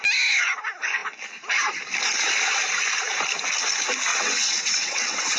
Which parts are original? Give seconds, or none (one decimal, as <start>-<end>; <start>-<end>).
0.0-4.1